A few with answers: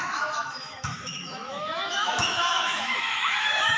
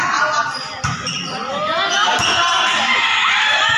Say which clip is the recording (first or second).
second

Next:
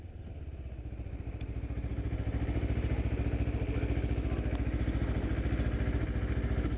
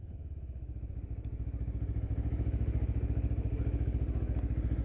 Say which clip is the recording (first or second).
first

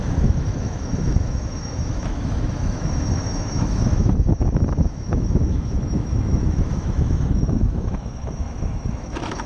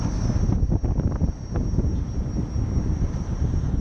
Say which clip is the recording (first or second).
second